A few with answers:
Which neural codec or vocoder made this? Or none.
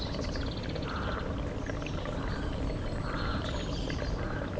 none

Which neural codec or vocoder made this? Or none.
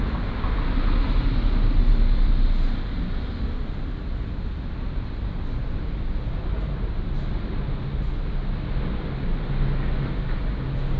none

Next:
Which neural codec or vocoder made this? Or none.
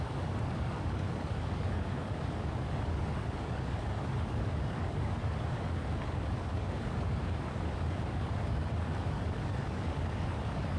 codec, DAC